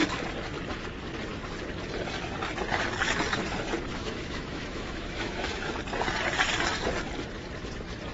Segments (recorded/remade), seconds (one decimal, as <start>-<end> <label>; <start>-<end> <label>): 0.0-3.9 recorded; 3.9-5.8 remade; 5.8-8.1 recorded